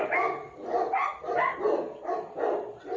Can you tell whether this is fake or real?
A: real